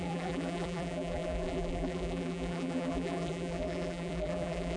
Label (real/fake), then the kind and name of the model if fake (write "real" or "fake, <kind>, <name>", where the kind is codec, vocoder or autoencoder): fake, vocoder, BigVGAN v2